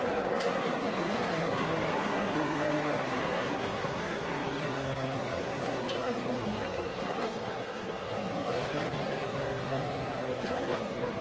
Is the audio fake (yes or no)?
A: yes